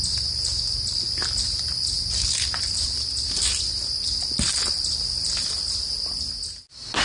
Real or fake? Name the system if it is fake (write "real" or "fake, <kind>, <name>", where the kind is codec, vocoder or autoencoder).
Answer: real